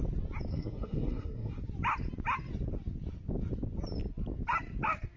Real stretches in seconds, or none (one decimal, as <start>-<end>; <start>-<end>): 0.0-0.5; 1.5-5.2